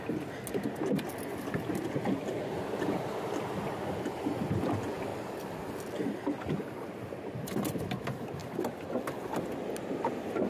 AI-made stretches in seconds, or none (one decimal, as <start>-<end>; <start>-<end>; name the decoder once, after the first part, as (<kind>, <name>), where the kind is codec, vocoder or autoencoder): none